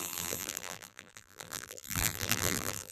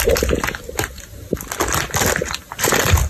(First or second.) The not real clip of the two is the first